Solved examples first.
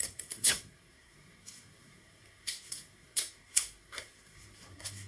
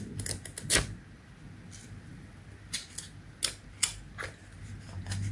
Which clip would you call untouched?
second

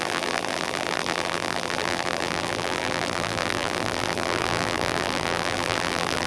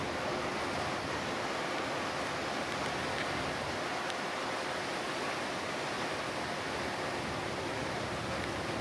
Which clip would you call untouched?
second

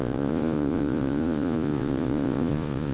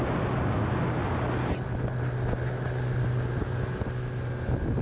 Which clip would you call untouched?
second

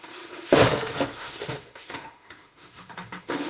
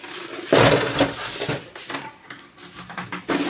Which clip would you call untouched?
second